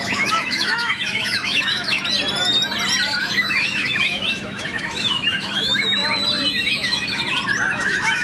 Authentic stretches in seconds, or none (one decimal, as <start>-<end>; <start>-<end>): 2.0-3.2; 6.0-6.5; 7.2-7.7